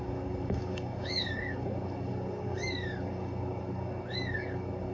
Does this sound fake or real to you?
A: fake